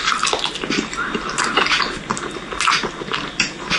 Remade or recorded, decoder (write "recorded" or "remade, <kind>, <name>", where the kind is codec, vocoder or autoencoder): recorded